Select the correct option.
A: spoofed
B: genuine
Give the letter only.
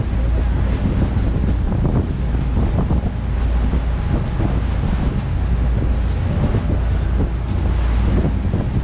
B